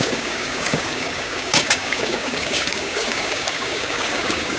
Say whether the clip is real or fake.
fake